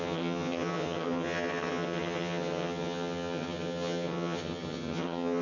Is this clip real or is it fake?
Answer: fake